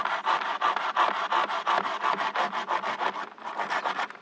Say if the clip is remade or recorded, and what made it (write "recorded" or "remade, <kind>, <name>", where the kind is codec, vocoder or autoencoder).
recorded